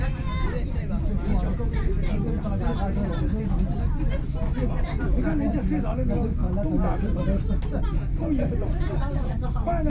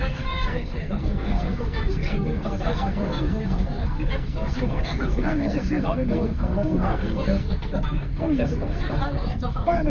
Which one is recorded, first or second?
first